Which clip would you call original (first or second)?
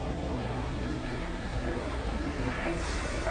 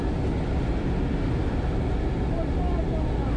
second